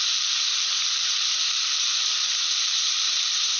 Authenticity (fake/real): fake